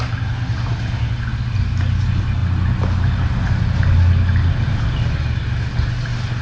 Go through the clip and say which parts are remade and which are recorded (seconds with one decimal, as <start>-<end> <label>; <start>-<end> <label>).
0.0-6.4 recorded